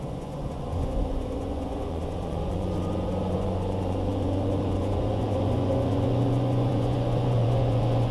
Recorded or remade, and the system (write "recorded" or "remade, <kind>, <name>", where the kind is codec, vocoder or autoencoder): remade, vocoder, Vocos